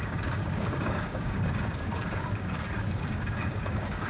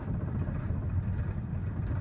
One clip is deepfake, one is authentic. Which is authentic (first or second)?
second